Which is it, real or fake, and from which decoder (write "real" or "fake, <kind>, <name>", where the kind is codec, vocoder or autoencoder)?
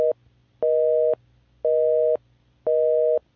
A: real